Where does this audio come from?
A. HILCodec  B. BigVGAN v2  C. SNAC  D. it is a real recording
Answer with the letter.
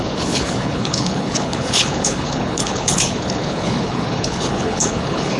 A